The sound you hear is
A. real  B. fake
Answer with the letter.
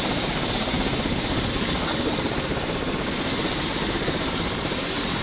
B